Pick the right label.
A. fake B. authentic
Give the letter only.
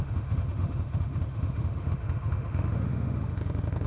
A